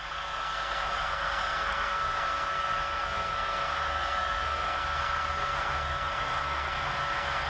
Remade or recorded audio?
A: remade